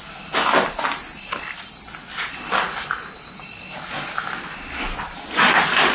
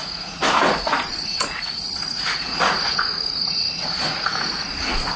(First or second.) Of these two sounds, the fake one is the second